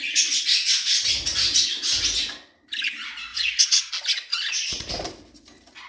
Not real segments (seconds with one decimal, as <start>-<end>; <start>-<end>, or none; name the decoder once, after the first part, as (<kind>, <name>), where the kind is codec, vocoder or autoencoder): 3.3-3.9 (vocoder, Vocos); 4.3-4.9